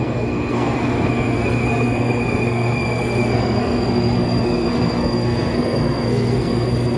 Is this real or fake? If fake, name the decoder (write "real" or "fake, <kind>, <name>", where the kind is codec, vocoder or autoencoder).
fake, codec, SNAC